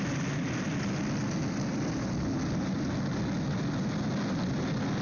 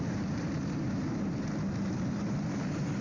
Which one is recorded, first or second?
first